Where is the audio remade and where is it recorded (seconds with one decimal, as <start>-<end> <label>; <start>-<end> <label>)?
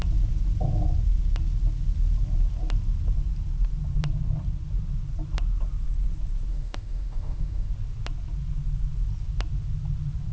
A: 0.0-6.5 recorded; 6.5-7.7 remade; 7.7-10.3 recorded